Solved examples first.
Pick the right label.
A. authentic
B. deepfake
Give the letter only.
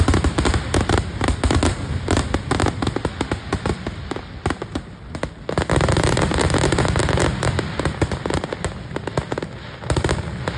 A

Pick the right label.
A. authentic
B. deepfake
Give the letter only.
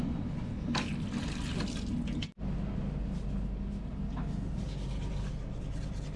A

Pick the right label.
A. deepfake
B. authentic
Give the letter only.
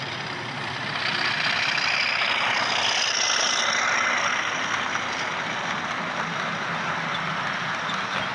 B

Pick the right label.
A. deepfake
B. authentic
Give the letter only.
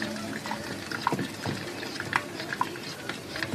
B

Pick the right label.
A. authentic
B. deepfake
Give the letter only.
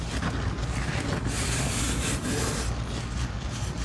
A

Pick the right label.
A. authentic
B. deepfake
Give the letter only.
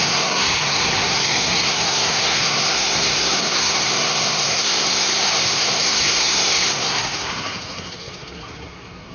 B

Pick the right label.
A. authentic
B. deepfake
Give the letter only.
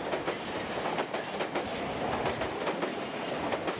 A